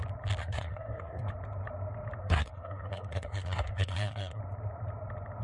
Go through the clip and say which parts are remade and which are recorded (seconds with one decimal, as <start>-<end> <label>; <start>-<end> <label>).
0.0-0.4 recorded; 0.4-1.3 remade; 1.3-2.2 recorded; 2.2-4.4 remade; 4.4-5.4 recorded